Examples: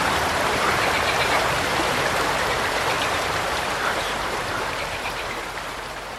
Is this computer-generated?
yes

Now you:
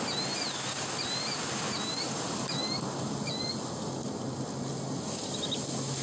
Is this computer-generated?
no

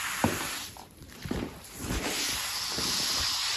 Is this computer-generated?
yes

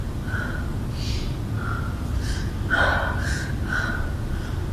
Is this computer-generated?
no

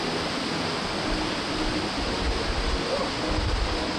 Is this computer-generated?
no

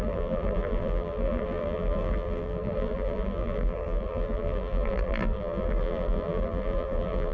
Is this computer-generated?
yes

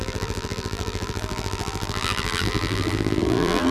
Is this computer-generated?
yes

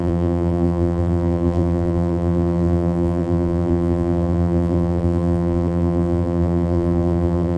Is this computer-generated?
yes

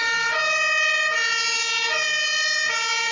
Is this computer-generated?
no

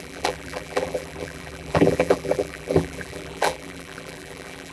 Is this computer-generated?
yes